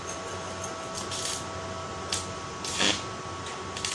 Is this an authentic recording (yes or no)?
yes